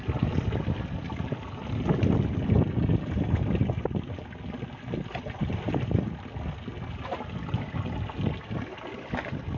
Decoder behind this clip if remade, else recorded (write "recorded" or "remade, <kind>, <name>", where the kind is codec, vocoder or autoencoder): recorded